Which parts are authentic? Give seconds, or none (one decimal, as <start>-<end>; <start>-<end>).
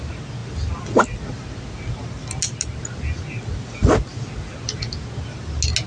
0.0-5.9